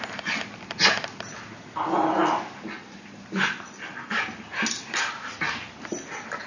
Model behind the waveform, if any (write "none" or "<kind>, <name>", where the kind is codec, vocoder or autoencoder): none